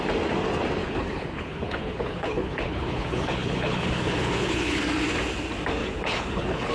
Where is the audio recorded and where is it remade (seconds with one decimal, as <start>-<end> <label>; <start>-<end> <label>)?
0.0-0.8 recorded; 0.8-4.8 remade; 4.8-5.8 recorded; 5.8-6.7 remade